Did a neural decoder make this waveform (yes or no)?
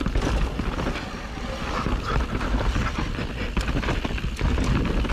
no